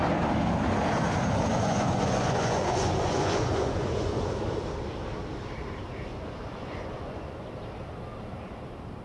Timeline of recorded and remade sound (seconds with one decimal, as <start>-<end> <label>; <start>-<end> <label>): 0.0-1.5 recorded; 1.5-4.3 remade; 4.3-6.1 recorded; 6.1-7.5 remade; 7.5-9.0 recorded